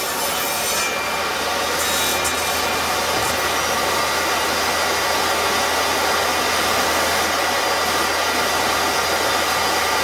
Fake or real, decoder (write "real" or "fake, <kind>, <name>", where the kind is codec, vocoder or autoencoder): real